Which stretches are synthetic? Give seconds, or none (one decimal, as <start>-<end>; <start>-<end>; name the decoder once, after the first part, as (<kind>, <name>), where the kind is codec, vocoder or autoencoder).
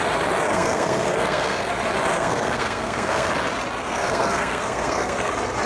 0.5-1.7 (codec, SNAC); 2.1-3.3; 3.8-5.3